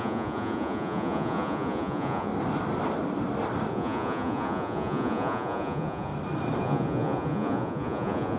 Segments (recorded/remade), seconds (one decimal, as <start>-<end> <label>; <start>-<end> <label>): 0.0-2.3 remade; 2.3-3.7 recorded; 3.7-6.1 remade; 6.1-6.6 recorded; 6.6-8.4 remade